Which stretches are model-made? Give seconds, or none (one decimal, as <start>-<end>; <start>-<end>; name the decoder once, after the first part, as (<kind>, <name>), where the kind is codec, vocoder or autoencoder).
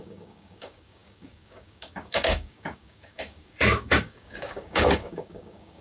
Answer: 0.0-5.8 (codec, DAC)